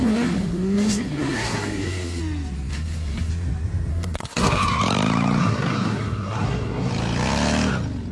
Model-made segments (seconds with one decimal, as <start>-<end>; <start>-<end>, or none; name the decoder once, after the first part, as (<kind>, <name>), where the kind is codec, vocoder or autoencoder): 0.0-2.2 (codec, SNAC); 2.7-3.3; 3.9-4.8; 5.4-6.9